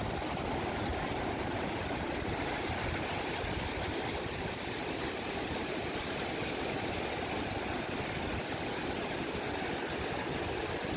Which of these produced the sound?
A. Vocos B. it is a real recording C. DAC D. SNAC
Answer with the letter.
B